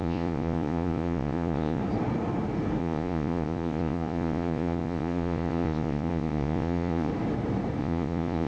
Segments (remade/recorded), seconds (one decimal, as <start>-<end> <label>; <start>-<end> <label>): 0.0-1.8 remade; 1.8-2.8 recorded; 2.8-7.1 remade; 7.1-7.8 recorded; 7.8-8.5 remade